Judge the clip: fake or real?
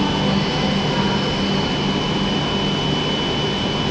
real